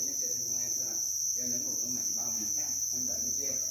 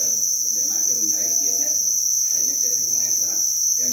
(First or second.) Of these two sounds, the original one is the first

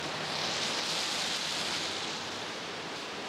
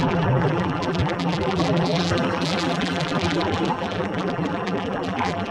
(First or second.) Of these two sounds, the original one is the first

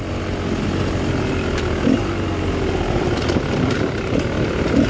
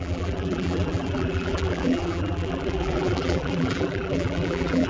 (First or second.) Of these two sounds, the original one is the first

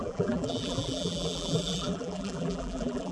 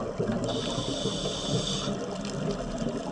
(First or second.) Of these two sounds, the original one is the second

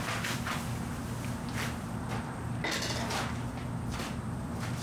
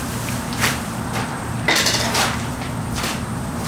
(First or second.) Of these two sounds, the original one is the first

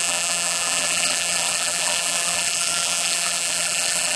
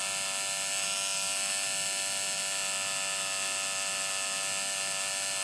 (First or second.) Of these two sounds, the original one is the second